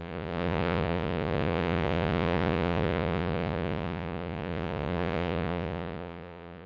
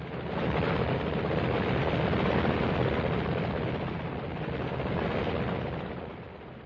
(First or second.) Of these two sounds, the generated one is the first